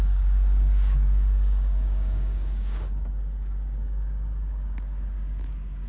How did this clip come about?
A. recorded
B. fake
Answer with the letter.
B